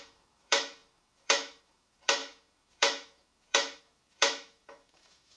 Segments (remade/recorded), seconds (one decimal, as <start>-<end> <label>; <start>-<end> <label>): 0.0-5.4 remade